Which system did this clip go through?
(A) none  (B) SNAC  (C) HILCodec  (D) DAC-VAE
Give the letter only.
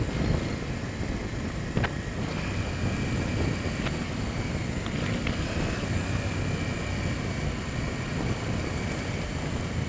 A